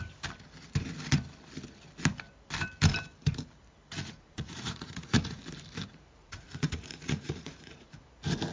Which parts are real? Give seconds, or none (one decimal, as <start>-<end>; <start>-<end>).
0.0-4.0; 5.4-6.2; 7.9-8.5